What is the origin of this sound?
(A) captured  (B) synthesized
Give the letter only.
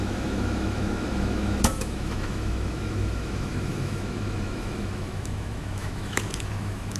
B